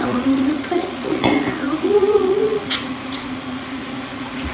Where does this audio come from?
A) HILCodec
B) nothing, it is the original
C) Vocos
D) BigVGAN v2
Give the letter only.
C